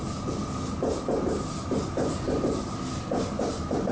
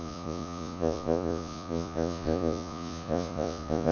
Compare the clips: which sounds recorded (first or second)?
first